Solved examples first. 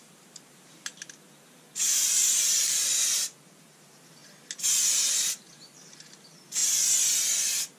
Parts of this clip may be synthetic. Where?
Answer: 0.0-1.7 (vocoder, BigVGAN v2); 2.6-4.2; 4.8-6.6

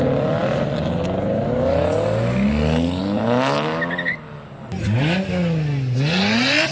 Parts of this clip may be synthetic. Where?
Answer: none

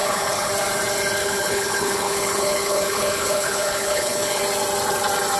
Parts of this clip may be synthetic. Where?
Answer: 0.0-0.5 (codec, HILCodec); 1.2-4.4

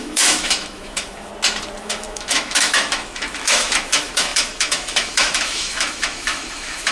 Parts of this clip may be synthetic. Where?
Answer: 0.0-1.3 (autoencoder, DAC-VAE); 1.8-6.9